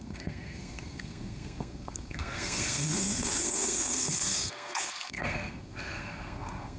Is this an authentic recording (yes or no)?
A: no